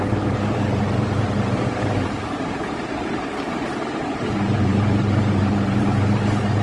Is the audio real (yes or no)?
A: no